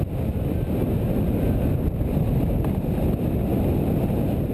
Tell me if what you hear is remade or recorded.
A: recorded